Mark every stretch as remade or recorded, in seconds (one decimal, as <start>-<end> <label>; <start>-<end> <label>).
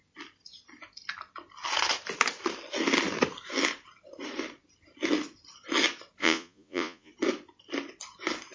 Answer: 0.0-6.2 recorded; 6.2-7.1 remade; 7.1-8.5 recorded